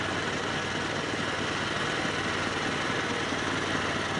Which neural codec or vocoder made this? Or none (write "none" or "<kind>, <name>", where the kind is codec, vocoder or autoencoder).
none